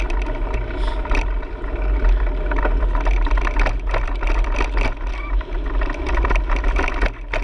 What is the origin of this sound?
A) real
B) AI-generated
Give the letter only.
A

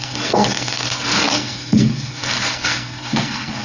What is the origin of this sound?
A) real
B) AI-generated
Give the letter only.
B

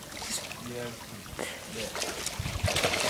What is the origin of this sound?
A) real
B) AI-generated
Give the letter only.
A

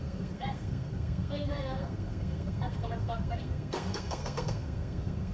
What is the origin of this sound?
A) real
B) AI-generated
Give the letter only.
B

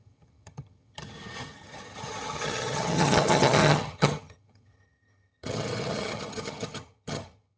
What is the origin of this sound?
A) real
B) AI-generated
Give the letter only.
B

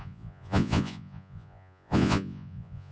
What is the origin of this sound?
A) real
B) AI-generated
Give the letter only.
B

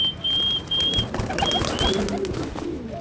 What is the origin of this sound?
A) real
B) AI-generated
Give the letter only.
A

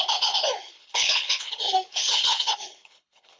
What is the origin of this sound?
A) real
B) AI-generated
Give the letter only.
B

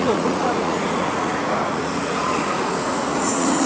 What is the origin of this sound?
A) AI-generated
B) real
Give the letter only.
A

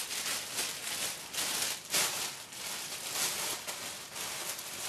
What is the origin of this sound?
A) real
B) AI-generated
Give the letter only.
A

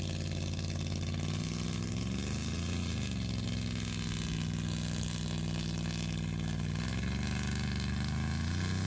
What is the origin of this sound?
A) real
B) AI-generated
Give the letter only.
A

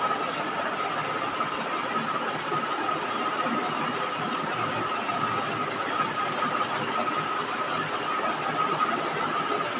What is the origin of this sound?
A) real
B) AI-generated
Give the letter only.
A